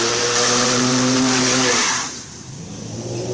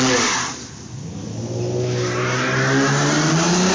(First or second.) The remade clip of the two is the first